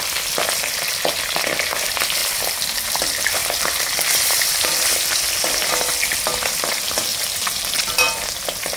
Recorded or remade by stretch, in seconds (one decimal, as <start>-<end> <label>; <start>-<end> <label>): 0.0-7.1 recorded; 7.1-7.7 remade; 7.7-8.8 recorded